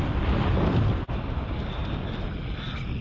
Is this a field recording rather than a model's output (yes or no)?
yes